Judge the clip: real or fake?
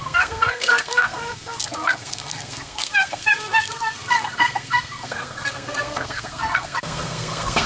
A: fake